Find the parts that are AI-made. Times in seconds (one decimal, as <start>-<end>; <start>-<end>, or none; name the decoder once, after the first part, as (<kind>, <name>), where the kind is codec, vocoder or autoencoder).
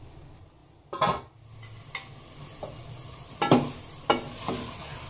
none